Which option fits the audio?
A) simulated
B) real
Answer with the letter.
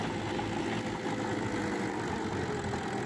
B